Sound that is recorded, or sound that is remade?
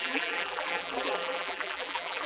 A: remade